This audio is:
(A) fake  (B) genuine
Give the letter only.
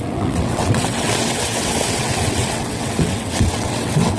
A